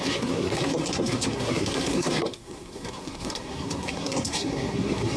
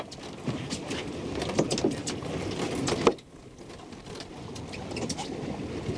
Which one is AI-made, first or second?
first